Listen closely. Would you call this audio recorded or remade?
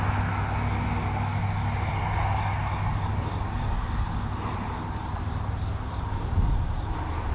recorded